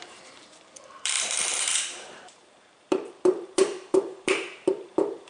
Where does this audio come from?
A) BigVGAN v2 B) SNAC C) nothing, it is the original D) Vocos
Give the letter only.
A